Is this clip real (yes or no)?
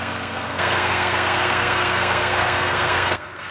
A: no